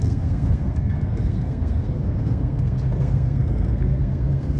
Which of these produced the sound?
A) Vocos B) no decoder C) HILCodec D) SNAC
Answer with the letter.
D